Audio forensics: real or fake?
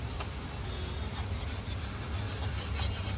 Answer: real